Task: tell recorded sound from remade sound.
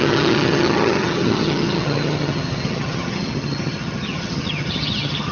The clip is remade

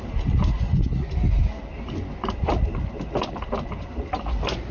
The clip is recorded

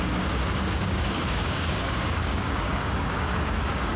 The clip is remade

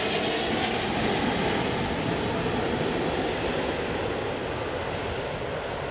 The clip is recorded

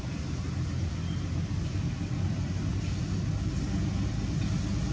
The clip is recorded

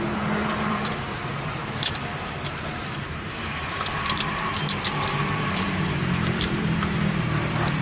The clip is remade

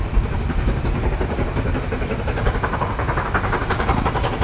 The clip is remade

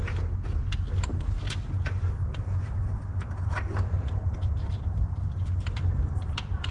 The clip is recorded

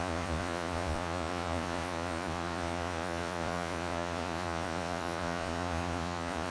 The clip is remade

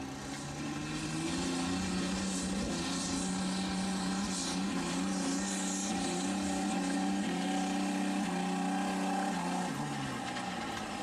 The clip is recorded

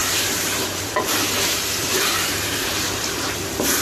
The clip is remade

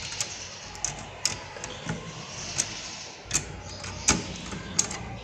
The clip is recorded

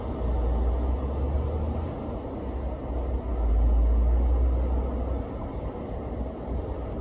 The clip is recorded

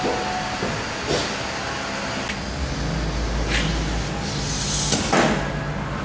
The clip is recorded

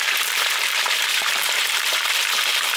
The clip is remade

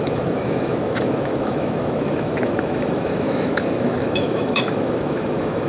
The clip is remade